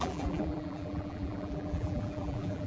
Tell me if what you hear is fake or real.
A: fake